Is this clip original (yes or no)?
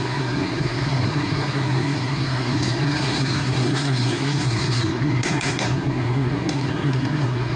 no